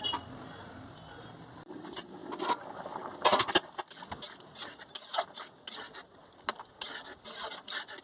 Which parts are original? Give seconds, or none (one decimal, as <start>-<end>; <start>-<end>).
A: 0.0-8.0